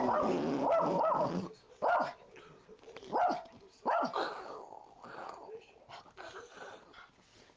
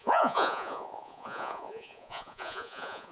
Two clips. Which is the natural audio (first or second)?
first